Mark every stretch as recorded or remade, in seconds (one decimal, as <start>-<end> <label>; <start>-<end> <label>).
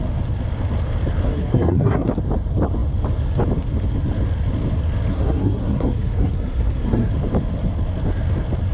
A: 0.0-1.2 recorded; 1.2-2.1 remade; 2.1-5.1 recorded; 5.1-7.1 remade; 7.1-8.7 recorded